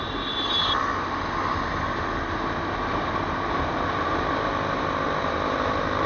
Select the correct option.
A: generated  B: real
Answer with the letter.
B